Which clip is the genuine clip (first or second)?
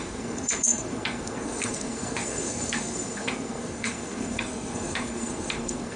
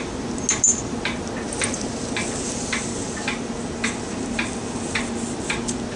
second